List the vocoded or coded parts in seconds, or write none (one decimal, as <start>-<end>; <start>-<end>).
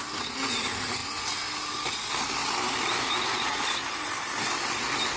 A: none